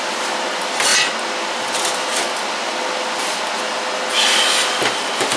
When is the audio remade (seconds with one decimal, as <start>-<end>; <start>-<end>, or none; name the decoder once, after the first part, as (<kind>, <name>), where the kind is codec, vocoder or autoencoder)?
none